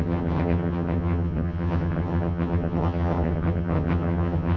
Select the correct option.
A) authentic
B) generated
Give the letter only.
B